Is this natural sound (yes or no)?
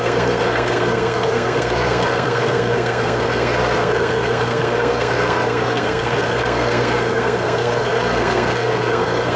no